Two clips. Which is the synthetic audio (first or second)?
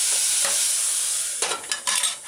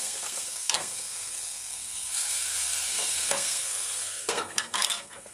second